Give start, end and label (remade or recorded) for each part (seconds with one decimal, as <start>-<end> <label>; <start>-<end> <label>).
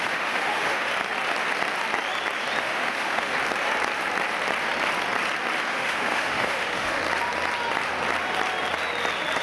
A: 0.0-0.9 remade; 0.9-2.6 recorded; 2.6-3.3 remade; 3.3-5.7 recorded; 5.7-7.0 remade; 7.0-9.4 recorded